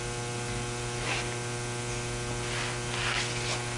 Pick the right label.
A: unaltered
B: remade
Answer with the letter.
A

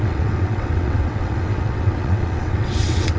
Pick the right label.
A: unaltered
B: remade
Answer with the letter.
B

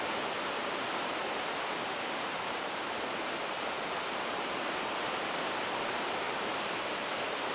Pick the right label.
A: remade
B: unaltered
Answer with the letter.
B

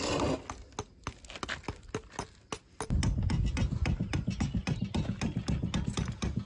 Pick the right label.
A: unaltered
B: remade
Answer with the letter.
A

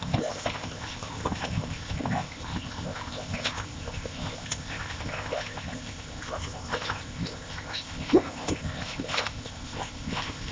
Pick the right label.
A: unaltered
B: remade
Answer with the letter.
B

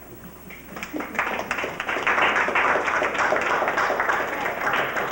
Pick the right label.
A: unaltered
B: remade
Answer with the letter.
A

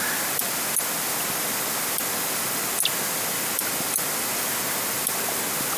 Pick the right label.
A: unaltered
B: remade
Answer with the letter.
B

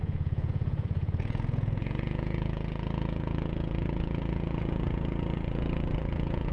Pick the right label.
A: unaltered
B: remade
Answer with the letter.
B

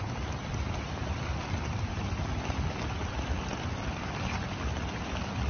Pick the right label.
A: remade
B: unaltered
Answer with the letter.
A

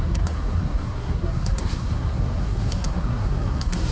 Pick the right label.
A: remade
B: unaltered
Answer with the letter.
A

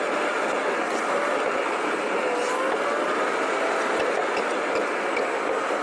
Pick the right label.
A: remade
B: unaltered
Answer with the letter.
B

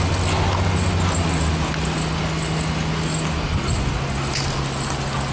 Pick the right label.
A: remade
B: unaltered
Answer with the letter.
B